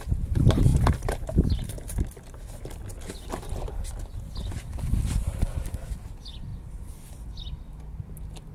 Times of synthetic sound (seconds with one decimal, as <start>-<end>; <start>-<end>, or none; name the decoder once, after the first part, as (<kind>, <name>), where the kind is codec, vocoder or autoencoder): none